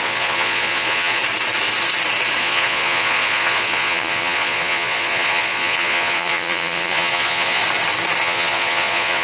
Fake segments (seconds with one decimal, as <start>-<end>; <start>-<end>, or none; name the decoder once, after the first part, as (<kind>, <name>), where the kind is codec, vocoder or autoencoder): 0.0-1.2 (vocoder, Vocos); 2.4-7.6; 8.2-9.2